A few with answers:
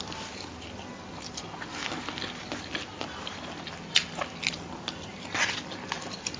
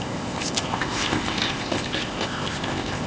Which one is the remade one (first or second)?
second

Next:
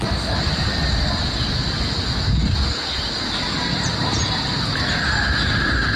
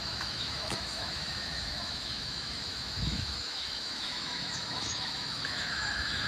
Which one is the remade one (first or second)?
second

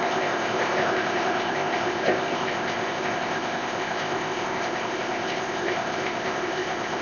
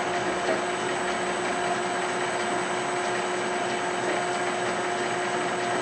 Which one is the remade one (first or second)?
first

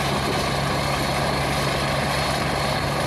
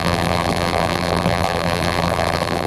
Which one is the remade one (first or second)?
second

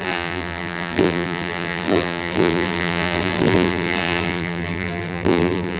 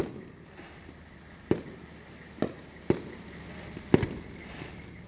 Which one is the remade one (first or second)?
first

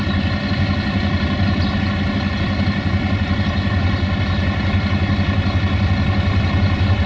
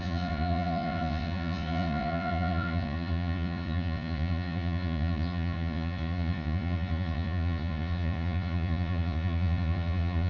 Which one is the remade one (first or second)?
second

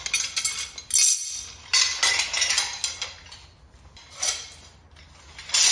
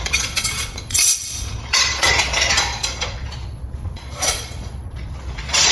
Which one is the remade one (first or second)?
second